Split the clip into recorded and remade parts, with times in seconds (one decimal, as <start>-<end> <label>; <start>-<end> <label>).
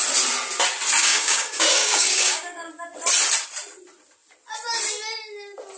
0.0-1.0 recorded; 1.0-2.7 remade; 2.7-5.8 recorded